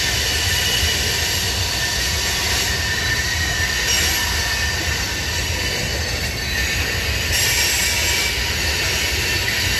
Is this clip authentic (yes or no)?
yes